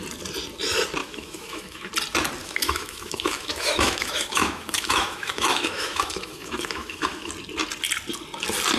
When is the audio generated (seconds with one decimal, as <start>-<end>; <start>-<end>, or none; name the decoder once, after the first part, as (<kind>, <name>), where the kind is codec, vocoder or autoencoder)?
1.0-1.9 (autoencoder, DAC-VAE); 2.4-7.3